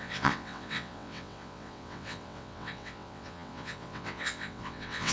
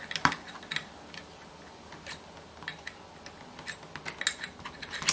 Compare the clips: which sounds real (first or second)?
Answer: second